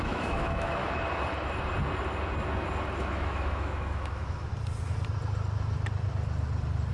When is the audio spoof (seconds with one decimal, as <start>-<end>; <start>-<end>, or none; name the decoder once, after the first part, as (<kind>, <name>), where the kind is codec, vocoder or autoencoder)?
0.0-0.8 (autoencoder, DAC-VAE); 3.0-4.5